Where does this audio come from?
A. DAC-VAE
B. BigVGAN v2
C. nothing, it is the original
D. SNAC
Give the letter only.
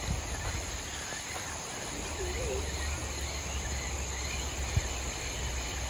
C